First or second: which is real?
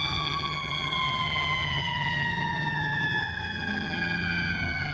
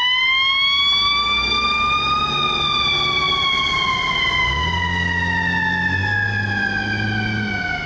second